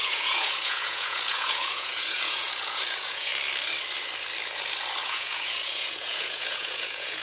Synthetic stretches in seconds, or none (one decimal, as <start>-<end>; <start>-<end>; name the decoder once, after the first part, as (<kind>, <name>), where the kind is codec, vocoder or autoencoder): 0.0-3.3 (vocoder, Vocos); 5.0-7.2